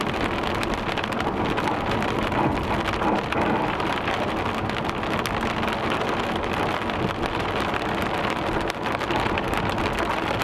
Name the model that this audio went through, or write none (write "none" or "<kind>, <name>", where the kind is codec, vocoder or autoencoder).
none